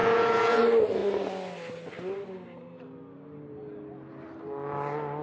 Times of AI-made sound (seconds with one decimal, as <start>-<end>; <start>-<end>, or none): 0.0-0.6